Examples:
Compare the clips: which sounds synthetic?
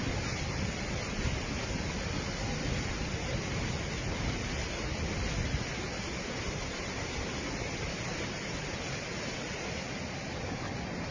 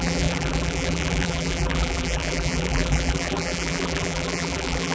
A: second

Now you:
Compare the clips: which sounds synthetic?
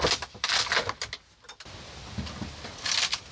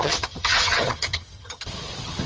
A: second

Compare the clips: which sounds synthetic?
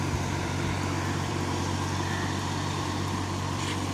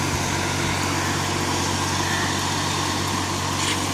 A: first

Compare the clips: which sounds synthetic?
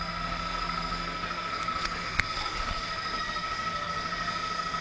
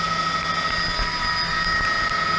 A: first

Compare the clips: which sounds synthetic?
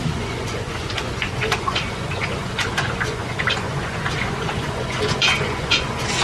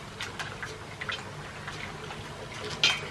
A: first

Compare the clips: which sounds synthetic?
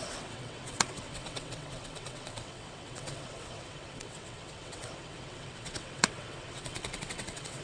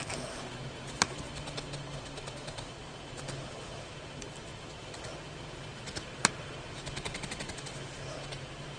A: first